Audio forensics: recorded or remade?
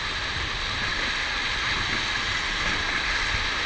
recorded